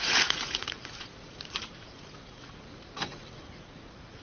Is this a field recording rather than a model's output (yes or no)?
no